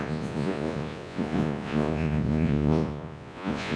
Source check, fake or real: fake